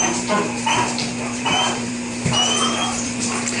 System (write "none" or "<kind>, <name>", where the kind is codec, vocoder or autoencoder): vocoder, BigVGAN v2